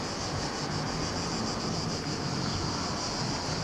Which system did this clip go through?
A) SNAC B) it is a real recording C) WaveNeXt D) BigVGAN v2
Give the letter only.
B